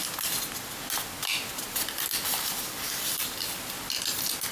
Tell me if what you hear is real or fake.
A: real